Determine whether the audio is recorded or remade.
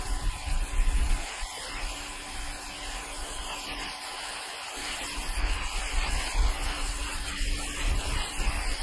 recorded